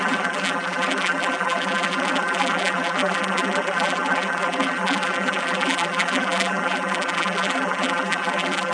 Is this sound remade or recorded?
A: remade